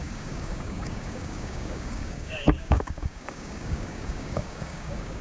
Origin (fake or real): fake